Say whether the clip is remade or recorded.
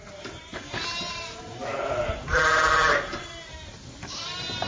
remade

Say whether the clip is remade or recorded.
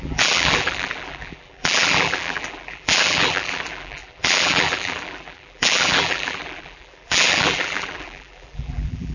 remade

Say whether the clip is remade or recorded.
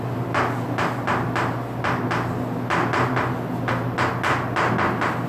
recorded